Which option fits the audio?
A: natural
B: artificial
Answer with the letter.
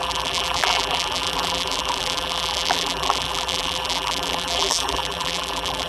B